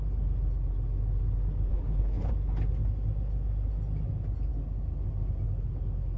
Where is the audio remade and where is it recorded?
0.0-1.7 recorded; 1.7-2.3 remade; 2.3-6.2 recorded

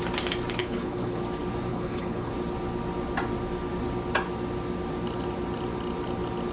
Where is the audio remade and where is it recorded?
0.0-0.6 recorded; 0.6-1.2 remade; 1.2-1.7 recorded; 1.7-2.3 remade; 2.3-6.5 recorded

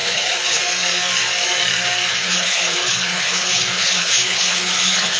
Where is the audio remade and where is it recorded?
0.0-0.6 remade; 0.6-2.1 recorded; 2.1-5.2 remade